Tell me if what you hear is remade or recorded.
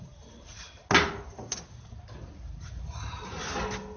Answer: recorded